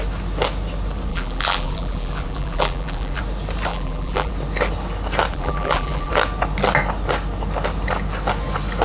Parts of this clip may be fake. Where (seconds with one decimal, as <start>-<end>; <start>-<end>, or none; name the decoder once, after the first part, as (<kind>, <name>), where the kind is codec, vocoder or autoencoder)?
1.1-3.2 (vocoder, BigVGAN v2); 3.7-4.3; 5.3-6.1

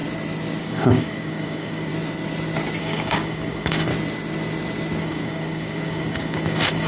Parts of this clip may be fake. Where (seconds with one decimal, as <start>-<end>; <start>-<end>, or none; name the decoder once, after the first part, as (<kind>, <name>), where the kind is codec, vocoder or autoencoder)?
0.6-1.9 (codec, DAC); 2.8-3.9; 5.0-6.9

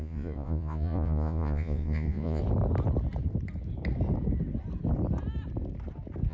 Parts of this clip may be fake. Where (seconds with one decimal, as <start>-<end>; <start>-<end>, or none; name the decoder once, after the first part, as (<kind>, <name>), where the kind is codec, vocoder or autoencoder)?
0.0-2.4 (vocoder, Vocos)

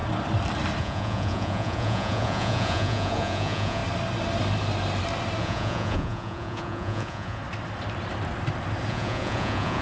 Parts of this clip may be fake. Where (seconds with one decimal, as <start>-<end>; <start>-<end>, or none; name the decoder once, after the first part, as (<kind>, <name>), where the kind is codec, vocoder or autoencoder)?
0.8-3.8 (vocoder, Vocos); 5.4-7.4; 8.9-9.8

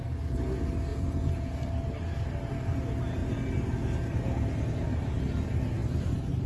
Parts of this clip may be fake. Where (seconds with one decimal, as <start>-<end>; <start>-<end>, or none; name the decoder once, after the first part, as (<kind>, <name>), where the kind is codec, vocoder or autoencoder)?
0.9-1.6 (vocoder, Vocos)

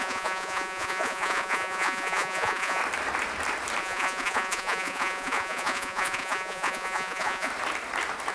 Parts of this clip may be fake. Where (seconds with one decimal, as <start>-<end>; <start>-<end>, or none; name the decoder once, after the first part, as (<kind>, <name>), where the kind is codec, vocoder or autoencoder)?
0.0-2.8 (vocoder, Vocos); 3.8-7.5